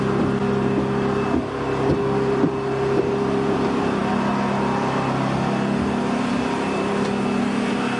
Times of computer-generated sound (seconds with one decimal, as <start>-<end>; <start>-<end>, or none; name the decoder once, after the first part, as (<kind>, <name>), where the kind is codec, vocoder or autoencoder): none